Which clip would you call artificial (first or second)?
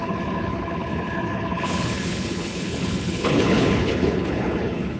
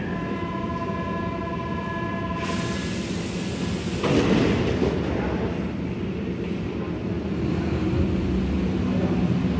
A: first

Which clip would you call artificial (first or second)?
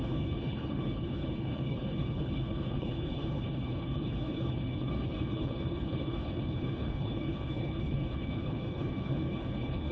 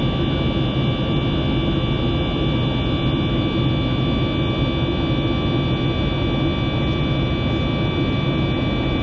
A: first